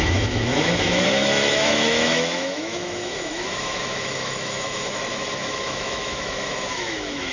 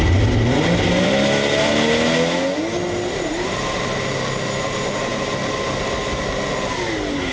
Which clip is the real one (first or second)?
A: second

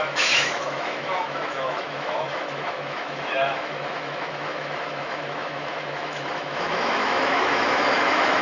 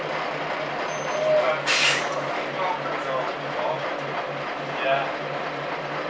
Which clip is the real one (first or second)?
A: second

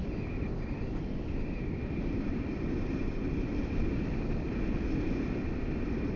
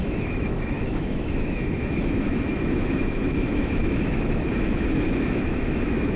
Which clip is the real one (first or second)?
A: first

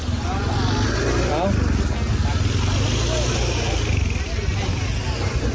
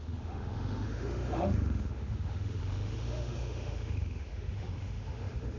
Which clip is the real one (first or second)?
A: first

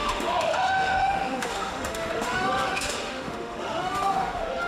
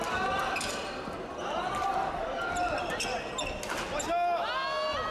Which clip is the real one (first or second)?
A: second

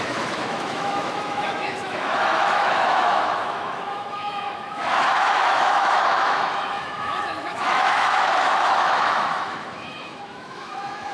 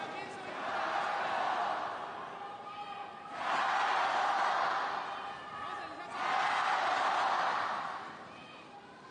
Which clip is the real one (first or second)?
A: second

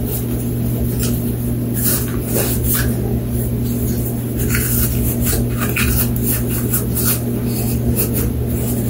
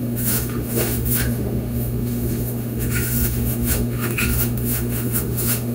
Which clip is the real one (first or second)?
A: first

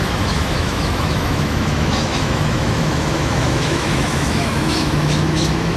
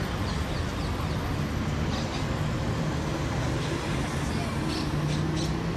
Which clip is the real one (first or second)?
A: second